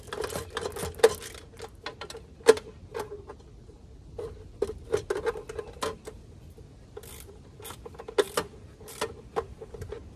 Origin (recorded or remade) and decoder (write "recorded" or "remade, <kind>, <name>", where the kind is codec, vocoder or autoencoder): recorded